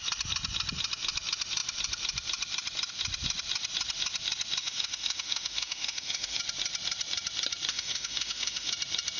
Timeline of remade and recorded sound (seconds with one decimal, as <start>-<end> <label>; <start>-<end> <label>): 0.0-4.6 recorded; 4.6-6.4 remade; 6.4-7.7 recorded; 7.7-8.7 remade; 8.7-9.2 recorded